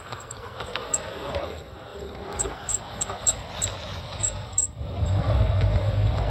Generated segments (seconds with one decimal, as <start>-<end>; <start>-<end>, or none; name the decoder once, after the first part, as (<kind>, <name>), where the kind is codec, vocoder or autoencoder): 0.0-3.5 (codec, SNAC); 4.0-6.3